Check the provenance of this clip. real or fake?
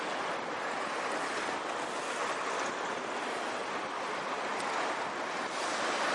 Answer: real